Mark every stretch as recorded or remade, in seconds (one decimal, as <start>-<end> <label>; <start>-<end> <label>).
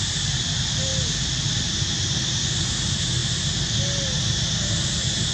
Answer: 0.0-5.3 recorded